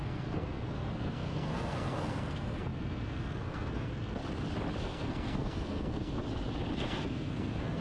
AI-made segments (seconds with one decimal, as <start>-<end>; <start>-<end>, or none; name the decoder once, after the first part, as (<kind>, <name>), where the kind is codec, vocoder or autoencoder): 0.0-4.2 (codec, SNAC); 4.8-6.2; 6.8-7.8